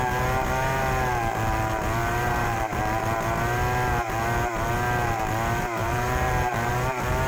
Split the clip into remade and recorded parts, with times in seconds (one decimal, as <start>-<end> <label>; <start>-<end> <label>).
0.0-2.0 recorded; 2.0-2.8 remade; 2.8-5.8 recorded; 5.8-6.7 remade; 6.7-7.3 recorded

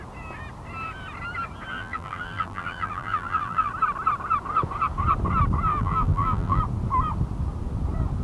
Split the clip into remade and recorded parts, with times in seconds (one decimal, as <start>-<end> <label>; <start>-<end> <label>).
0.0-1.7 recorded; 1.7-3.7 remade; 3.7-5.7 recorded; 5.7-6.6 remade; 6.6-8.2 recorded